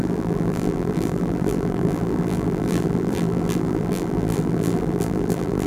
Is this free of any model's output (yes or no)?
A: no